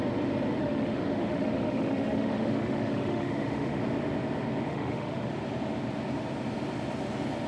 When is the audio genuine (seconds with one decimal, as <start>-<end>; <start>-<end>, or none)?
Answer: 0.0-0.6; 3.8-4.7; 5.3-7.5